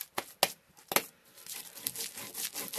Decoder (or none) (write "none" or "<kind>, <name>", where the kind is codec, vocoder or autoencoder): none